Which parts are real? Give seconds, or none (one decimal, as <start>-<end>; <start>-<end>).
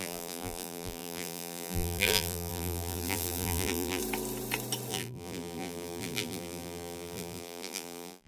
4.0-4.9